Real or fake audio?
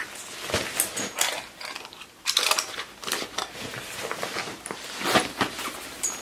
real